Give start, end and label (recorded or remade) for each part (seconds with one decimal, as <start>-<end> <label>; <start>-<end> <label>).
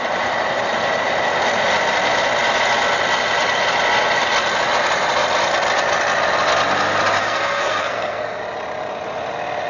0.0-7.2 recorded; 7.2-8.4 remade; 8.4-9.7 recorded